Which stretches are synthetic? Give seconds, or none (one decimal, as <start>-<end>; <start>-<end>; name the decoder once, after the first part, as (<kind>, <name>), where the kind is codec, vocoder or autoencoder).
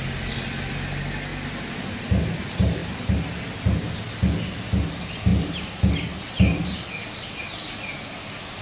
none